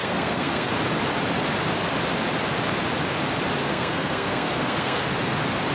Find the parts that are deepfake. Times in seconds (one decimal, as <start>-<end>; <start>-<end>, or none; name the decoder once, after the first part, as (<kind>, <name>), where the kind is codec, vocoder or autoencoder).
0.0-0.7 (codec, SNAC); 3.6-5.0